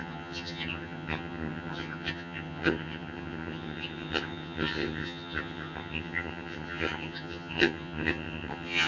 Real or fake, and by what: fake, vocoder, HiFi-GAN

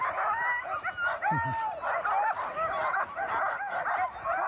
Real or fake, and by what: real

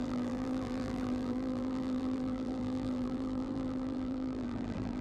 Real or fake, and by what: fake, vocoder, BigVGAN v2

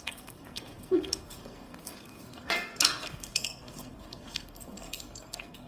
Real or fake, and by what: fake, codec, SNAC